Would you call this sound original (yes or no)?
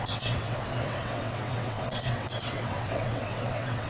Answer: no